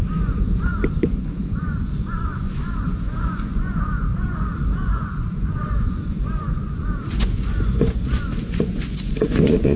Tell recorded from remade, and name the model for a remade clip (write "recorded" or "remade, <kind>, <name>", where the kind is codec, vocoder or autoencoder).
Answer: remade, vocoder, Vocos